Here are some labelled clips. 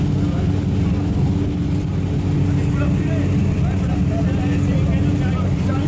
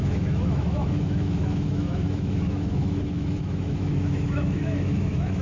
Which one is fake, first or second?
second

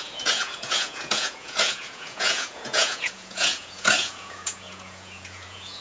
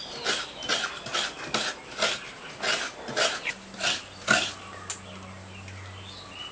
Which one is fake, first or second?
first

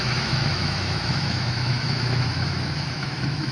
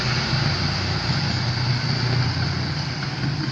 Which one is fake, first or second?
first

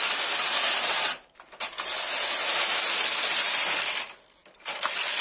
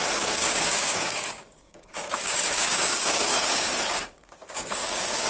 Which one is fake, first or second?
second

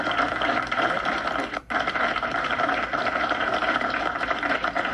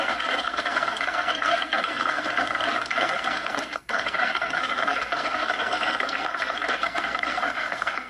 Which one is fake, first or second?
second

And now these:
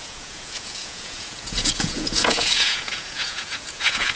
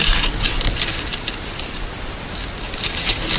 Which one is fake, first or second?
first